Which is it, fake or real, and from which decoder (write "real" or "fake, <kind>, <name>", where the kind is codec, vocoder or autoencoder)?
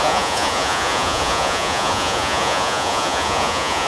fake, vocoder, Vocos